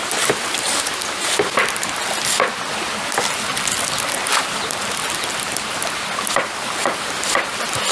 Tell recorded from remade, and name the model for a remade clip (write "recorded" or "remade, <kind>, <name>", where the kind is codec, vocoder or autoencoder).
recorded